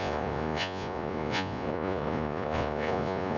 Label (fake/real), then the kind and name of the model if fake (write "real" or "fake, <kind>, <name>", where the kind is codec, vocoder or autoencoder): fake, vocoder, Vocos